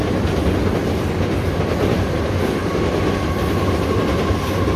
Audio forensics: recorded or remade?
recorded